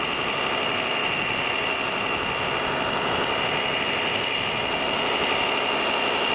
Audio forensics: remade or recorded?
recorded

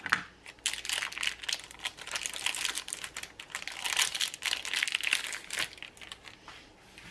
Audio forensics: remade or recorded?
recorded